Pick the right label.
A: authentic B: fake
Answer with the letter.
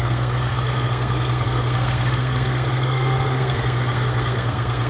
B